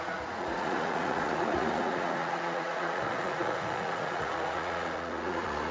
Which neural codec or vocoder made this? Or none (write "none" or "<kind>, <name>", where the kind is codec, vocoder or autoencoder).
vocoder, Vocos